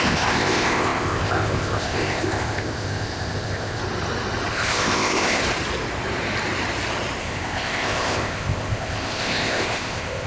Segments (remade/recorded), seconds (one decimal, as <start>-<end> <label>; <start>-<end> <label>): 0.0-3.8 remade; 3.8-4.5 recorded; 4.5-5.4 remade; 5.4-7.2 recorded; 7.2-10.3 remade